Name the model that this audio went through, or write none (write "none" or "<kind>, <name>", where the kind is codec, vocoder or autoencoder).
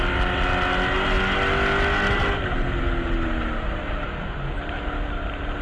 none